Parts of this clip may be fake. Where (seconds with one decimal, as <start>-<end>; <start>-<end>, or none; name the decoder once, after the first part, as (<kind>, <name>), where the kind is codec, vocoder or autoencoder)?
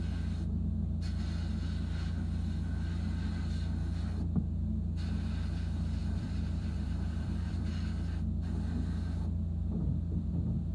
6.0-7.7 (vocoder, BigVGAN v2)